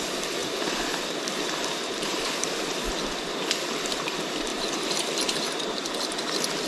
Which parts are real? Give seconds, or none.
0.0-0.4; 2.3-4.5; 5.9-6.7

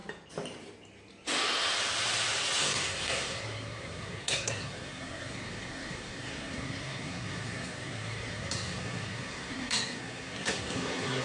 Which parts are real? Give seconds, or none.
0.0-2.6

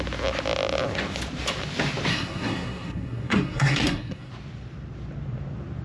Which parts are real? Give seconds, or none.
0.0-2.1; 4.3-5.8

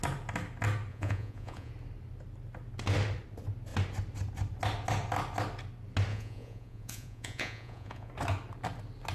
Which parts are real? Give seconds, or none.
0.0-0.9; 1.7-6.1; 8.1-9.1

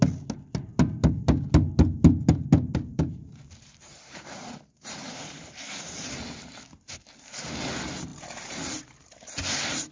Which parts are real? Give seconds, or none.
0.0-2.9; 6.5-9.9

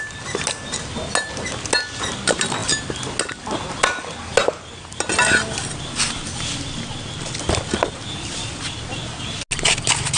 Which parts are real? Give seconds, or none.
0.0-10.2

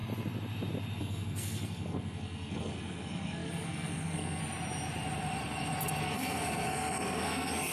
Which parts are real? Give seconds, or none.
0.0-1.0; 4.4-6.0

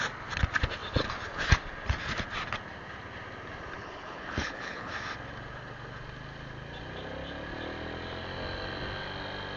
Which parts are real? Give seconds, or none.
0.0-3.8; 4.9-9.6